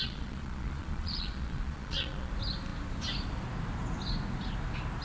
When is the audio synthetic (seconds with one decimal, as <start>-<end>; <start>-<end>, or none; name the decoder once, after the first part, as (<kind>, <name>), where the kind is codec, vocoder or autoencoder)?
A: 0.0-2.3 (vocoder, Vocos)